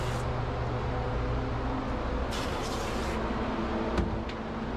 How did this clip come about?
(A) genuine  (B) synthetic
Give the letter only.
A